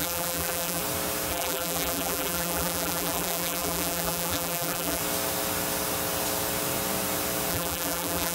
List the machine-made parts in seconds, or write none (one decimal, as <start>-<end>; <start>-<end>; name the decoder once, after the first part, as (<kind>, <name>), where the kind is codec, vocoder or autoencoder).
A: 0.0-0.8 (vocoder, BigVGAN v2); 1.3-5.0; 7.5-8.3